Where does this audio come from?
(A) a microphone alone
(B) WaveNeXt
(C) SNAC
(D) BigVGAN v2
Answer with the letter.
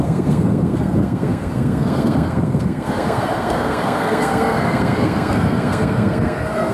C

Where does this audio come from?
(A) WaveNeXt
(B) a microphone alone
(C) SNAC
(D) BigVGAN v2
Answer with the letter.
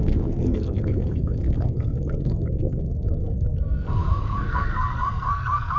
C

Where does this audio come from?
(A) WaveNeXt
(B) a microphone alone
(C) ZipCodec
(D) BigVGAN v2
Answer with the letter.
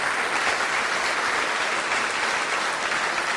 B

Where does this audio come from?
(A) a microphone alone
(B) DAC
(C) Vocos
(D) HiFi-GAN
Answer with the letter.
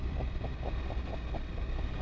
A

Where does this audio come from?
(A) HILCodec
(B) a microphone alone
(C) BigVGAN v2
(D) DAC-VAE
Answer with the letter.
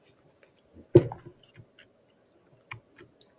B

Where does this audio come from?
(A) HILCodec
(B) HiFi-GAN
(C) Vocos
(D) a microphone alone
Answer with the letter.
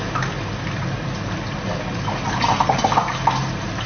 D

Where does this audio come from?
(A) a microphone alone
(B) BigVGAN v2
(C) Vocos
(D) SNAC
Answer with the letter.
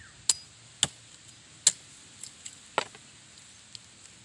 A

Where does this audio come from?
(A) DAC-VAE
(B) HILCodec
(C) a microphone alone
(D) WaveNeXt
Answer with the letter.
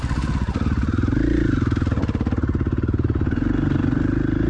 C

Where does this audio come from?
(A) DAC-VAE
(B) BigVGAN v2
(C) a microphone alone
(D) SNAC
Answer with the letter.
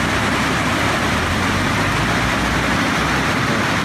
C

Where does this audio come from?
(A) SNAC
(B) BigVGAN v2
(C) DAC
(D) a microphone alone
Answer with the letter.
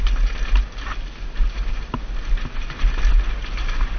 D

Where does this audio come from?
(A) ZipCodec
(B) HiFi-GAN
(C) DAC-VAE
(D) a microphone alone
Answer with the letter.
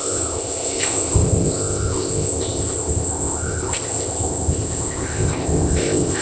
A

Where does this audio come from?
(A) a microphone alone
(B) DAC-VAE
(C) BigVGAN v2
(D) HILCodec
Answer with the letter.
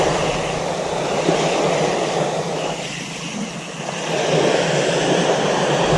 A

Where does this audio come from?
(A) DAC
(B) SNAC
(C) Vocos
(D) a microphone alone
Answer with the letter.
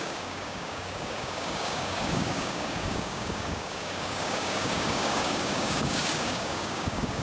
A